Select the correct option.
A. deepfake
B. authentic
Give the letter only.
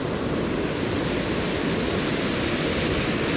B